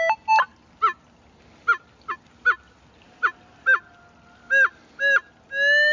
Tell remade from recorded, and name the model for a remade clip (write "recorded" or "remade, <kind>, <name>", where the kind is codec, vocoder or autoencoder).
recorded